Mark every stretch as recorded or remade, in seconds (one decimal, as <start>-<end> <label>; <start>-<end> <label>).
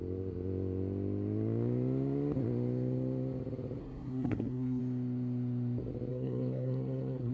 0.0-3.8 recorded; 3.8-4.8 remade; 4.8-6.1 recorded; 6.1-7.3 remade